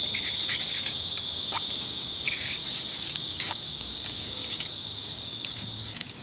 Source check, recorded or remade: remade